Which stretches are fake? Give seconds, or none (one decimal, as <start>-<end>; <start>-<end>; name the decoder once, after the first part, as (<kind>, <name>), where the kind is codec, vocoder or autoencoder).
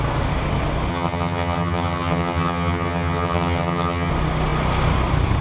0.9-4.1 (vocoder, HiFi-GAN)